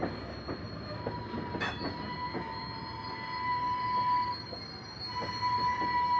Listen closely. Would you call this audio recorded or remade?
recorded